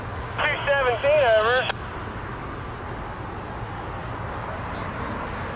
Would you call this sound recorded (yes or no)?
yes